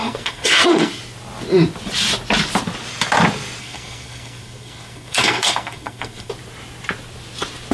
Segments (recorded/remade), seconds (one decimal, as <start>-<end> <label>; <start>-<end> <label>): 0.0-0.9 remade; 0.9-3.6 recorded; 3.6-6.3 remade; 6.3-7.7 recorded

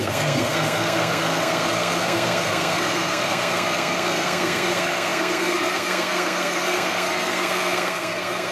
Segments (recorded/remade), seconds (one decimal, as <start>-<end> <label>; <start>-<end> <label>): 0.0-8.5 remade